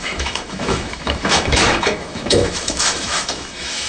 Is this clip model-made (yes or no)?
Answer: yes